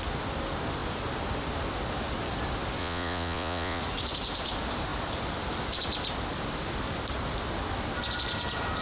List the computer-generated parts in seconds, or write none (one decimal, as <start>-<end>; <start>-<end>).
2.8-3.8